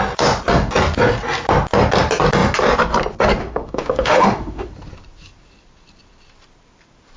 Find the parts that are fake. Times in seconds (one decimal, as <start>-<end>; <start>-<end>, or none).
3.4-4.7